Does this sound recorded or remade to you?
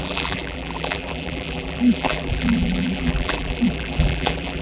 remade